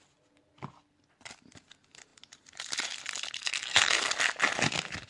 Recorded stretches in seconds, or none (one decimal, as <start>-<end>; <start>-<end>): 0.0-3.4; 4.1-5.1